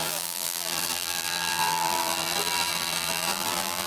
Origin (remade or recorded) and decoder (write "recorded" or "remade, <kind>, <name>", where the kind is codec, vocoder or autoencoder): remade, vocoder, BigVGAN v2